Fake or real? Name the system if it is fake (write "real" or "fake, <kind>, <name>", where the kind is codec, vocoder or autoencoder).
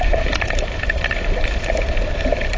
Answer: fake, vocoder, BigVGAN v2